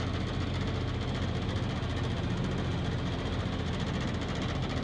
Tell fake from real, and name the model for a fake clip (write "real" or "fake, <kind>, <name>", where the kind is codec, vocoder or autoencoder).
real